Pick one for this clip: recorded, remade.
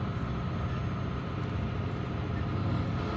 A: recorded